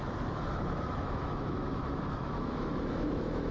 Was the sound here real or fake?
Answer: fake